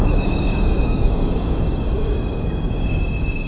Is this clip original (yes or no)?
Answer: no